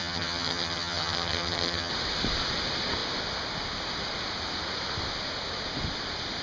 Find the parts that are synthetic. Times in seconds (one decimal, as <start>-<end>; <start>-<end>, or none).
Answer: 0.0-1.9